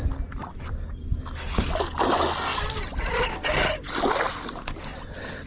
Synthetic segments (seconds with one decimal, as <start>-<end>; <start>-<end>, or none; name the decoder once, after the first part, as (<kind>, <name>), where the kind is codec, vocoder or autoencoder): 2.5-5.5 (vocoder, BigVGAN v2)